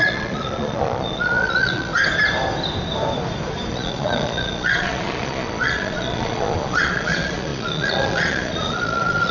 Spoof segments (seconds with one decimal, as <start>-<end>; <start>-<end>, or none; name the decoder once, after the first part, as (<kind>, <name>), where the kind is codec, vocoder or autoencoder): 0.0-1.9 (vocoder, Vocos); 3.7-9.3